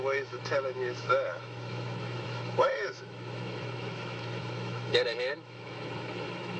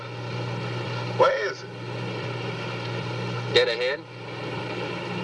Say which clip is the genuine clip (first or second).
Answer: second